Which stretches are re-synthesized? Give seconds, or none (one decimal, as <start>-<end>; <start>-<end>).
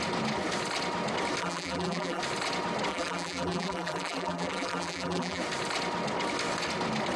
1.4-2.2; 2.9-5.4